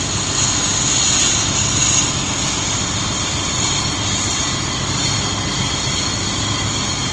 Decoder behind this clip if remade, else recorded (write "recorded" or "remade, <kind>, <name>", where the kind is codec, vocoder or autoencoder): recorded